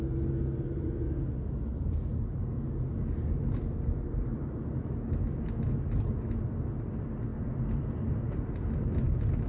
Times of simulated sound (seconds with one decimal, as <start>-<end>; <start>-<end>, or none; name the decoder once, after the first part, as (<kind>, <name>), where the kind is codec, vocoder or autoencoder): none